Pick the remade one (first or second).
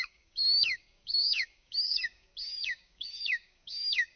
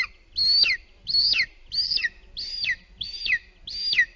first